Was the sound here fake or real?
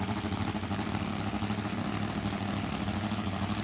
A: real